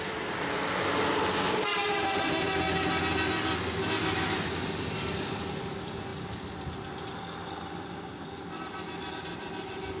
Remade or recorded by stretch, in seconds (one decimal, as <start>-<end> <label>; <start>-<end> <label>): 0.0-10.0 recorded